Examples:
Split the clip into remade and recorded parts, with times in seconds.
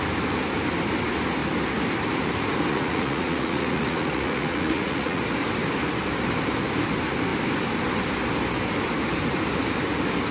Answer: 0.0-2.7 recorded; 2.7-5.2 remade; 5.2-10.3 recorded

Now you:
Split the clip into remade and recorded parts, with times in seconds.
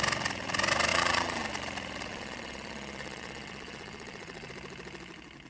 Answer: 0.0-0.9 recorded; 0.9-1.5 remade; 1.5-2.1 recorded; 2.1-4.5 remade; 4.5-5.5 recorded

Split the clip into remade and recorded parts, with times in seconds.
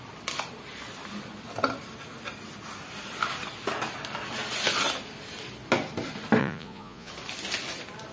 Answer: 0.0-6.4 recorded; 6.4-7.1 remade; 7.1-8.1 recorded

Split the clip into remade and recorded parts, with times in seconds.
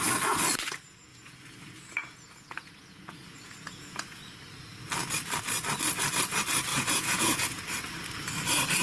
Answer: 0.0-1.1 recorded; 1.1-4.2 remade; 4.2-6.7 recorded; 6.7-7.6 remade; 7.6-8.8 recorded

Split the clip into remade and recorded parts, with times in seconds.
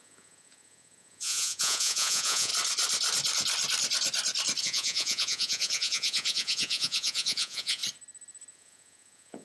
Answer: 0.0-2.5 remade; 2.5-4.6 recorded; 4.6-7.8 remade; 7.8-8.5 recorded; 8.5-9.4 remade